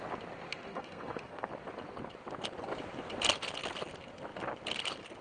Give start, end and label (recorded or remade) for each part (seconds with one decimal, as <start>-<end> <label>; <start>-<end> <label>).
0.0-0.7 recorded; 0.7-1.5 remade; 1.5-5.2 recorded